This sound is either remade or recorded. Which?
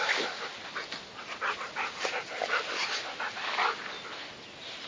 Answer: recorded